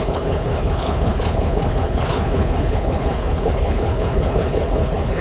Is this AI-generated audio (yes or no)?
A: yes